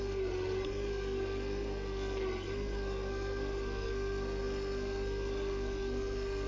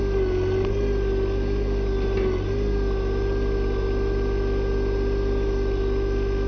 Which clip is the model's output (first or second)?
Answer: first